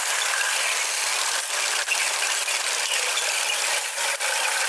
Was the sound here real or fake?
real